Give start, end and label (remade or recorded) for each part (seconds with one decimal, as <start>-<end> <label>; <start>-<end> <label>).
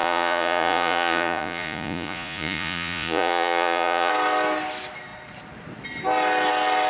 0.0-4.1 remade; 4.1-6.9 recorded